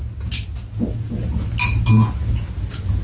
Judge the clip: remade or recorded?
recorded